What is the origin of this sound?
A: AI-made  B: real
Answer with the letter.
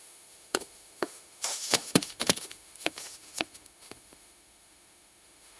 A